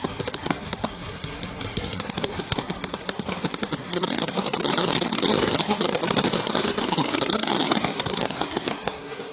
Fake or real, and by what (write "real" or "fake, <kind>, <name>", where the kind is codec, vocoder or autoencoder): fake, codec, SNAC